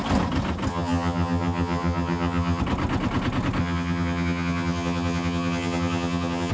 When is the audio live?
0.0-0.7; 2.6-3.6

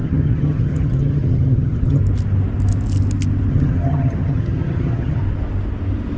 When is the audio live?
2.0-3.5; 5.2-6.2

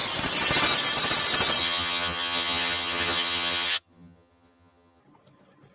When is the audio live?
0.0-1.6; 5.0-5.7

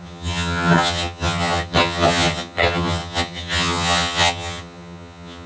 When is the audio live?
none

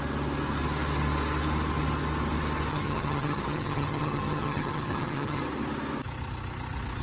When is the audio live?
0.0-2.7; 5.4-7.0